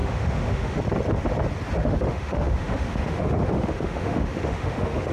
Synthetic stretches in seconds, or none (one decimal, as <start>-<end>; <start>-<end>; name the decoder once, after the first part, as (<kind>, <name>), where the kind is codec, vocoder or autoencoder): 0.0-0.8 (autoencoder, DAC-VAE); 1.8-5.1